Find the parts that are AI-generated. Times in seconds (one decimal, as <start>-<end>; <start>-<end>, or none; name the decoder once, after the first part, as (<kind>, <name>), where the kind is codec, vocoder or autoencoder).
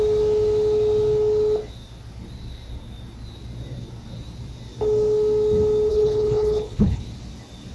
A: 5.9-7.0 (codec, HILCodec)